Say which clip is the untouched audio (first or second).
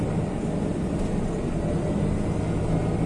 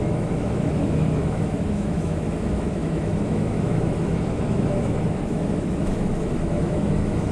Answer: first